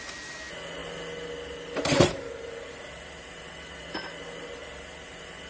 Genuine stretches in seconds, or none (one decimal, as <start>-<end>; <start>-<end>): 0.0-5.5